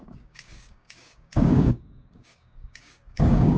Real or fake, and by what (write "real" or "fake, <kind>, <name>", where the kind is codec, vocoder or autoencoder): fake, codec, DAC